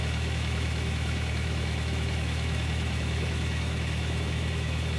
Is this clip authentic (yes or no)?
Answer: no